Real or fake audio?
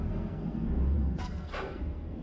fake